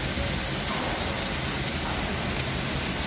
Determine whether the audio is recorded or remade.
recorded